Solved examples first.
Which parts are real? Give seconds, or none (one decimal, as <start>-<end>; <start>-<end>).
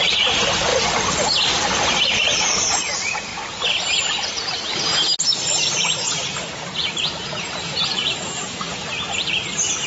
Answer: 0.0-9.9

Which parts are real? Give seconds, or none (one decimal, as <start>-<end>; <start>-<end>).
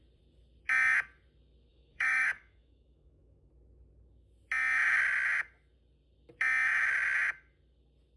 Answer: 0.0-1.7; 3.5-8.2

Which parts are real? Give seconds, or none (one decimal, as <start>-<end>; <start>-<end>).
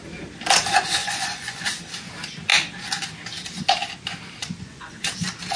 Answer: 0.0-1.0; 1.7-4.4; 5.1-5.6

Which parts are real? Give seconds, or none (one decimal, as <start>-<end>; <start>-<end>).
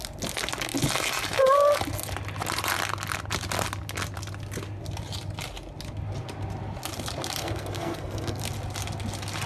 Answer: 0.0-7.4; 8.4-9.5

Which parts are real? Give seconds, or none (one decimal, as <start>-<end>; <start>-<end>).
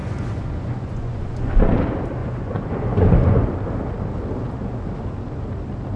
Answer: 1.6-2.2; 3.5-6.0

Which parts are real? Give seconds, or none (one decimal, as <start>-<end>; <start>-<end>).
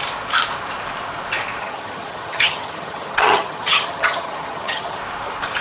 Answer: 0.0-1.6; 5.0-5.6